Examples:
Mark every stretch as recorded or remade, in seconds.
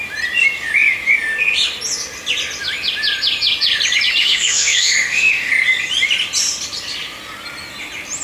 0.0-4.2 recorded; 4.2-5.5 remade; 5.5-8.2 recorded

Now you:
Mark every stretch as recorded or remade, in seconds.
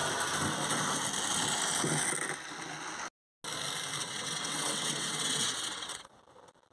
0.0-4.0 recorded; 4.0-6.1 remade; 6.1-6.7 recorded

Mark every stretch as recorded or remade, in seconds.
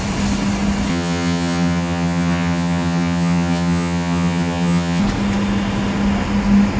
0.0-0.9 recorded; 0.9-5.0 remade; 5.0-6.8 recorded